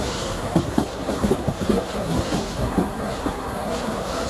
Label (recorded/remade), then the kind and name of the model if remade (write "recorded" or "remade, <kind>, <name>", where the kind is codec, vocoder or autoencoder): remade, codec, SNAC